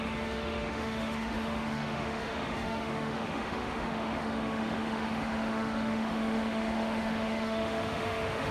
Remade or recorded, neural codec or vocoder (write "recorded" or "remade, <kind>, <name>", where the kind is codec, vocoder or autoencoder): remade, autoencoder, DAC-VAE